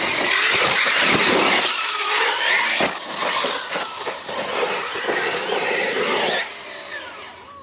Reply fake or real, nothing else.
real